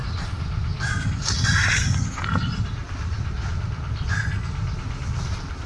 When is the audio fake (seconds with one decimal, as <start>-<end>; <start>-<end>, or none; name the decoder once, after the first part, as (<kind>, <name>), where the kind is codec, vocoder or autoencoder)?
none